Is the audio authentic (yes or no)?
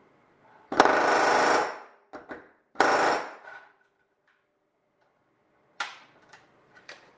yes